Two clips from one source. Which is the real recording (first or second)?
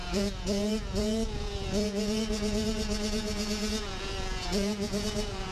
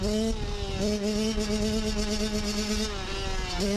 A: second